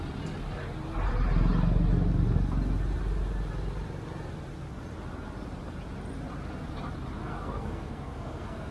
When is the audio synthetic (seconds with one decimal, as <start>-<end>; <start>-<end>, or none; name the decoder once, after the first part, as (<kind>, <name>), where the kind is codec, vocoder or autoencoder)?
7.2-8.7 (codec, SNAC)